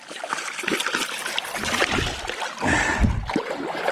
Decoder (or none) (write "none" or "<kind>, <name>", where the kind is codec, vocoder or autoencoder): none